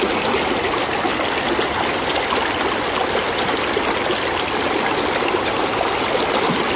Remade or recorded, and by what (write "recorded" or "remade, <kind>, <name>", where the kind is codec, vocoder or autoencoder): recorded